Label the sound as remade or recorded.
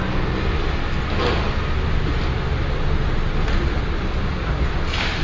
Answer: recorded